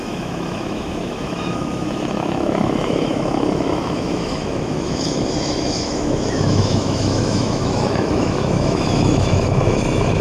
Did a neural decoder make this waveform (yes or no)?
yes